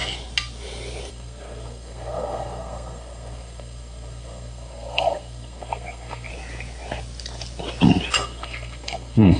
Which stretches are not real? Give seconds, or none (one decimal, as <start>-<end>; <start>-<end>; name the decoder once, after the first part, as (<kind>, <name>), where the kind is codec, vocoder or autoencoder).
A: 1.1-6.3 (codec, SNAC); 8.1-9.4